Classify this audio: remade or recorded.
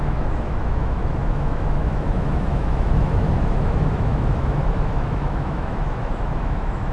remade